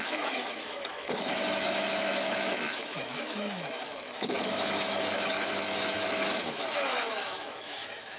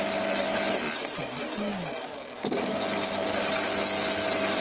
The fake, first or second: first